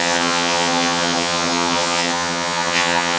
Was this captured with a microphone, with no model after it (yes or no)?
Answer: no